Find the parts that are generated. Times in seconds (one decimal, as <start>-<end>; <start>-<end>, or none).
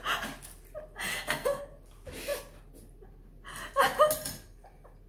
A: 1.1-1.6